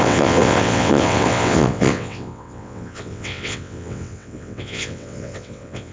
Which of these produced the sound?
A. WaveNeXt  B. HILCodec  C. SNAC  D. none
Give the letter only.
A